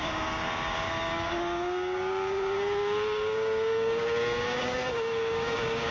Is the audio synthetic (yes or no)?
yes